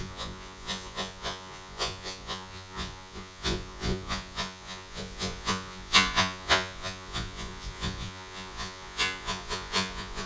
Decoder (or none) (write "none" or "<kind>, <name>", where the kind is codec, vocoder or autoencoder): vocoder, Vocos